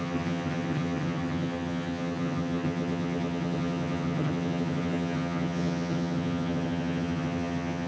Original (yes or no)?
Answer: no